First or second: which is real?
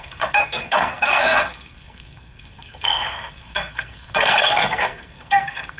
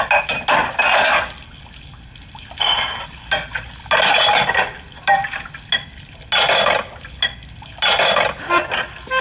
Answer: second